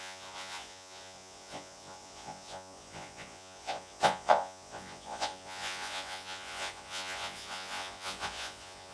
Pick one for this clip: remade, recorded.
remade